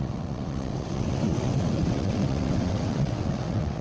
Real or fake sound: fake